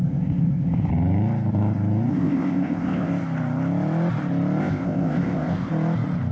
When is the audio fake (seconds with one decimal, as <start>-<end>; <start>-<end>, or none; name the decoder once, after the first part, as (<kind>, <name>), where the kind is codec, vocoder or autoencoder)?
0.0-0.9 (codec, ZipCodec); 2.1-3.1; 4.6-5.7